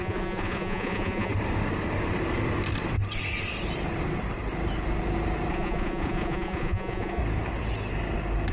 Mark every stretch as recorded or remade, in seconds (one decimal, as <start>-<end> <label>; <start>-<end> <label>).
0.0-1.3 remade; 1.3-5.5 recorded; 5.5-7.2 remade; 7.2-8.5 recorded